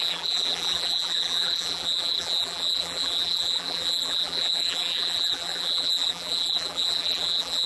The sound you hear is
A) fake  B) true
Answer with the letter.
A